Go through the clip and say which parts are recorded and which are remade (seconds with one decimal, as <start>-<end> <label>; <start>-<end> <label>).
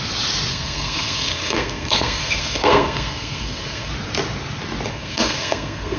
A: 0.0-0.5 recorded; 0.5-3.9 remade; 3.9-4.9 recorded; 4.9-6.0 remade